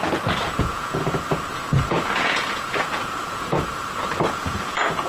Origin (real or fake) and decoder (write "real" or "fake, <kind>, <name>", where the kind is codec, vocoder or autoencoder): fake, vocoder, Vocos